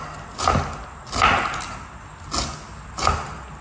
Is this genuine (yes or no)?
yes